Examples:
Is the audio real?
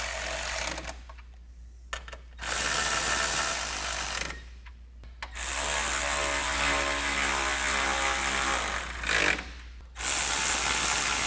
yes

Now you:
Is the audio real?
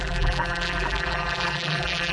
no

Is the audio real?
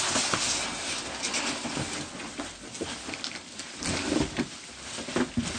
yes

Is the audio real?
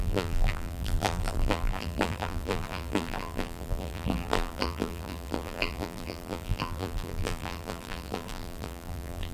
no